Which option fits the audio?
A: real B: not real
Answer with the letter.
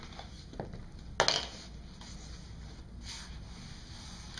A